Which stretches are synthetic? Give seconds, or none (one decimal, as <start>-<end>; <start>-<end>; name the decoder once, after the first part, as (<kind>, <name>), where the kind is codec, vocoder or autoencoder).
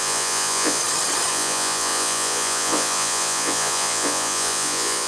0.0-0.8 (vocoder, Vocos); 1.3-5.1